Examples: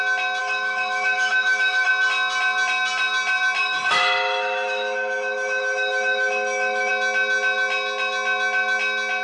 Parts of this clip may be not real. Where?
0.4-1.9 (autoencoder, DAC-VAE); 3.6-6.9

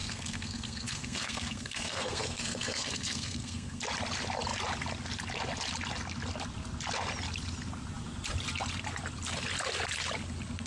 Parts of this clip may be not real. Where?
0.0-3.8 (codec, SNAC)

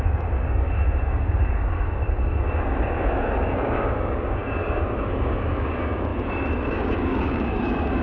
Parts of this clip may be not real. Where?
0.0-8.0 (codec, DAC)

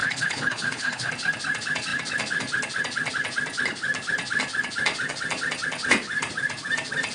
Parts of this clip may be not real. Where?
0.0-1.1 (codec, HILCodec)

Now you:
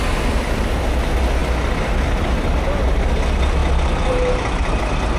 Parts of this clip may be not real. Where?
none

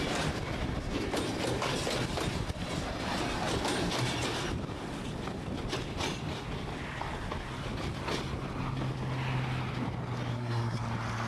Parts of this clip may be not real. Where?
10.3-10.8 (codec, SNAC)